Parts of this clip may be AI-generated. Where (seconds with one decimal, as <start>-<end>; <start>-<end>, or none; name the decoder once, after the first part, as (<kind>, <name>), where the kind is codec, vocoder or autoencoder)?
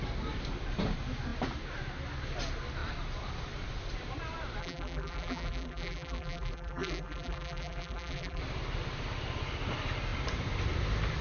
4.6-8.4 (vocoder, BigVGAN v2)